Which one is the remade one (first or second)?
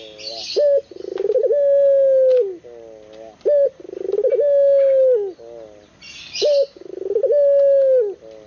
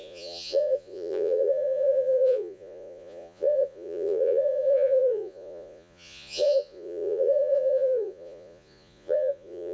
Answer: second